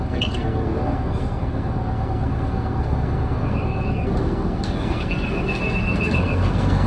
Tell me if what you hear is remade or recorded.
remade